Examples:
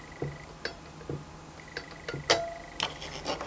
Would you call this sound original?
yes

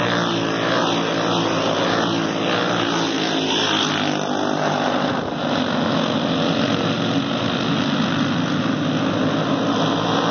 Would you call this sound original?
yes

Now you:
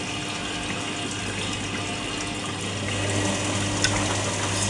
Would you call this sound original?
yes